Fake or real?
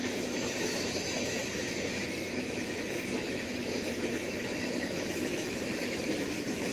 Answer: fake